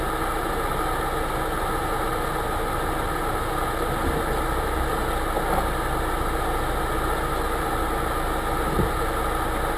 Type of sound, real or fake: real